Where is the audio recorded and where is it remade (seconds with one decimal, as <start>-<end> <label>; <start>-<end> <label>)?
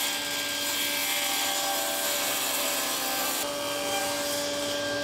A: 0.0-5.0 recorded